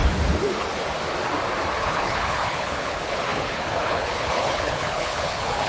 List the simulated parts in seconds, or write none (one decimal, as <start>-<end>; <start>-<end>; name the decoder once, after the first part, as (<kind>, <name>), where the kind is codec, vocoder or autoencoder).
1.8-5.7 (codec, HILCodec)